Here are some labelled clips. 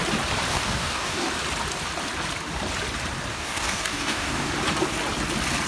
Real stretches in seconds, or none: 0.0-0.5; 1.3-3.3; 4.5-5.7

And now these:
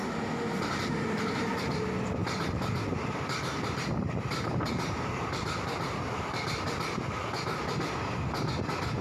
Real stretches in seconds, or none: 0.0-2.2; 6.6-9.0